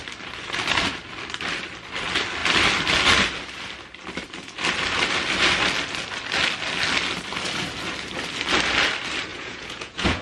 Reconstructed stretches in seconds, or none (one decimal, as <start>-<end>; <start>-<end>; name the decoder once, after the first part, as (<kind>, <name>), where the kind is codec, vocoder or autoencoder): 9.3-10.2 (vocoder, Vocos)